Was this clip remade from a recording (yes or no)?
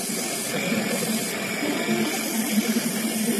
no